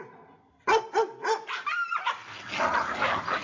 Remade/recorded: recorded